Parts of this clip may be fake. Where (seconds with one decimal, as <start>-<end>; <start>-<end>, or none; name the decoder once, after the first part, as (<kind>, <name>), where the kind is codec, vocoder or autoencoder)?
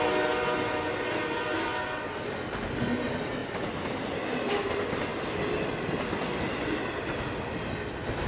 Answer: 3.4-4.0 (vocoder, BigVGAN v2)